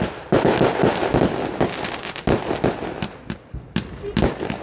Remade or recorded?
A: recorded